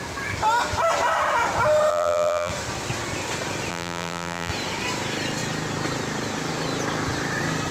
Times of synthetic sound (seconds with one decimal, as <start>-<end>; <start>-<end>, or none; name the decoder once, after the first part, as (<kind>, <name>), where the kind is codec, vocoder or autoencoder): 1.9-2.5 (vocoder, BigVGAN v2); 3.7-4.5